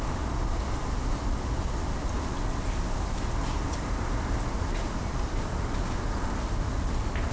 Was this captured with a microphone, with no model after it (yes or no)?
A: yes